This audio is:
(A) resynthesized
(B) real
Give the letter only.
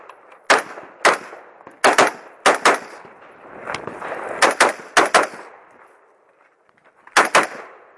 B